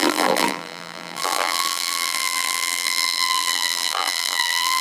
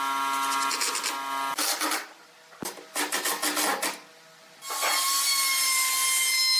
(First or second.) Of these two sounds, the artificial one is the first